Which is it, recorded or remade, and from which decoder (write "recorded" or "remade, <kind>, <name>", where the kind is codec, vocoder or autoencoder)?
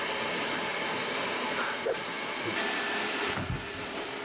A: remade, vocoder, BigVGAN v2